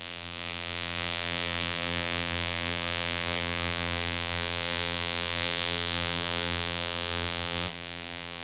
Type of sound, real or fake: fake